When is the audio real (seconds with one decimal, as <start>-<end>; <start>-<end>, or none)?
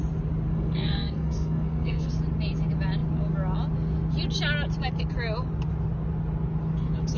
0.0-0.5; 2.1-7.2